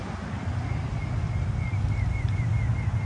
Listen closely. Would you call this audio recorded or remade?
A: recorded